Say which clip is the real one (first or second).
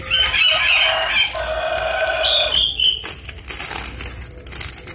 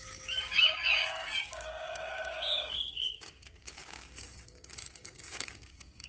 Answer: first